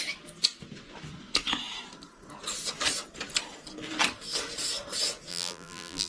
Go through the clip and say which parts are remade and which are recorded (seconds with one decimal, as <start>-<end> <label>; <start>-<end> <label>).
0.0-5.3 recorded; 5.3-6.1 remade

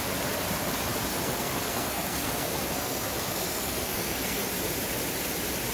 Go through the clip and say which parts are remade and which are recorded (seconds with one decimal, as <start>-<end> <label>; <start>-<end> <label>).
0.0-1.1 recorded; 1.1-4.5 remade; 4.5-5.7 recorded

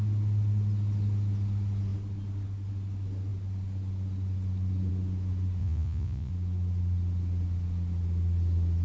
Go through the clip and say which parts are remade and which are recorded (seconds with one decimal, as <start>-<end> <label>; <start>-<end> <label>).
0.0-5.6 recorded; 5.6-6.3 remade; 6.3-8.8 recorded

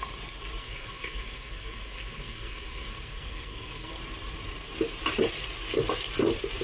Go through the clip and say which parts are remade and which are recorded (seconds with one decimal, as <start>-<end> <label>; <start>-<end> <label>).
0.0-0.6 recorded; 0.6-4.0 remade; 4.0-6.6 recorded

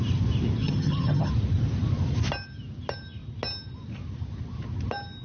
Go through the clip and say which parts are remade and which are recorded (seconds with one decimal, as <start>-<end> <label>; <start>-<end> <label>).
0.0-0.6 recorded; 0.6-1.3 remade; 1.3-5.2 recorded